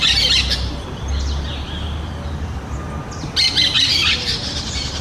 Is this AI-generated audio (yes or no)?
no